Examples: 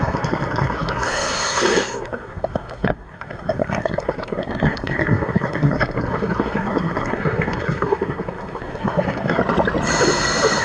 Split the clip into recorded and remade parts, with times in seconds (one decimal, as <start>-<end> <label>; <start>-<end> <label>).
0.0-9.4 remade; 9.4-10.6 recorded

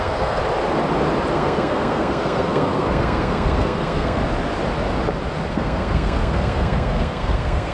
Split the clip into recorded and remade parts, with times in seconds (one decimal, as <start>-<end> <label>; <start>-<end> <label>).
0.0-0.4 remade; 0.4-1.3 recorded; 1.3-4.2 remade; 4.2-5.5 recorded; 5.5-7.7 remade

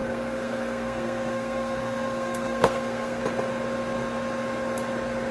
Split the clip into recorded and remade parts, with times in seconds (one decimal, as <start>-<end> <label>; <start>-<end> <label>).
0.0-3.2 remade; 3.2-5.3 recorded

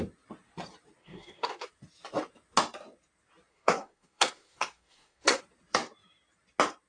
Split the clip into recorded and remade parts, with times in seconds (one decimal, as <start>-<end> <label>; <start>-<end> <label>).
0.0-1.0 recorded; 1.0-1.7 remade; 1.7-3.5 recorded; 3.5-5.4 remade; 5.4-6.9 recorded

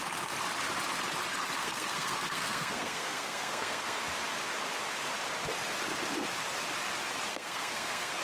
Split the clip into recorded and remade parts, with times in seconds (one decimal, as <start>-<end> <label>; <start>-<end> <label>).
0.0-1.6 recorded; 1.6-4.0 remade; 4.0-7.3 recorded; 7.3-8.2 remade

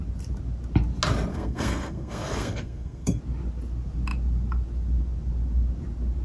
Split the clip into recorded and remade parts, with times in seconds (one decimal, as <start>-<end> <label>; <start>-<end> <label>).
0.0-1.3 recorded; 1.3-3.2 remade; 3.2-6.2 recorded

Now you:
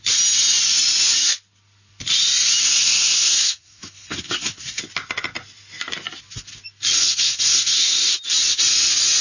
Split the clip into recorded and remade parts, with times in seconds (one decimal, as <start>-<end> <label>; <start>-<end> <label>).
0.0-2.6 recorded; 2.6-4.8 remade; 4.8-7.0 recorded; 7.0-8.1 remade; 8.1-9.2 recorded